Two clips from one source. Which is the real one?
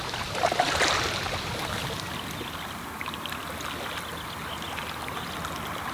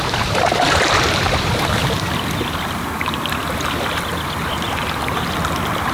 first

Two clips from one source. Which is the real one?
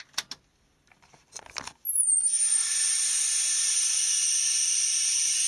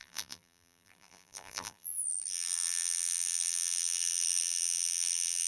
first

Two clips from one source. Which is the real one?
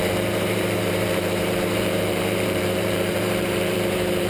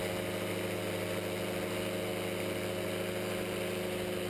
second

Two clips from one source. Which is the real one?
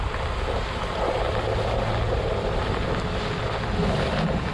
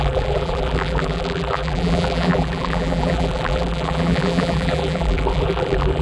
first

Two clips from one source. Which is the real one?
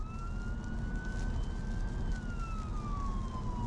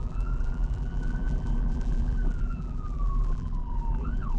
first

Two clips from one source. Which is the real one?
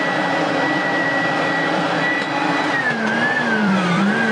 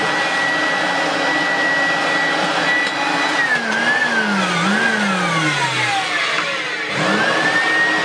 second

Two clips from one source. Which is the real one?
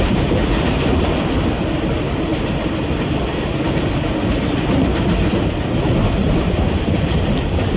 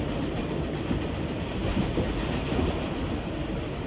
second